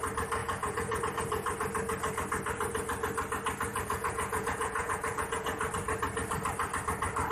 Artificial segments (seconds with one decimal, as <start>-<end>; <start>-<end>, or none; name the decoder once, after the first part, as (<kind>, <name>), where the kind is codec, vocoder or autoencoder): 0.4-1.0 (vocoder, Vocos); 3.7-5.7